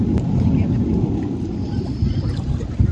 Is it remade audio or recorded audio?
recorded